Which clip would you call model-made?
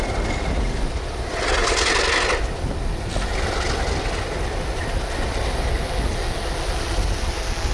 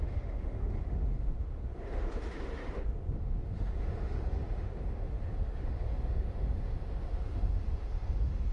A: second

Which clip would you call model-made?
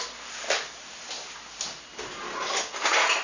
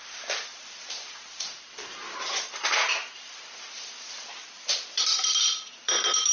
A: second